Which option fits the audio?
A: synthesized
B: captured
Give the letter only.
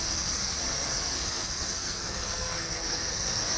A